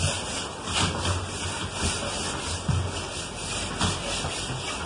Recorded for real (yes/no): yes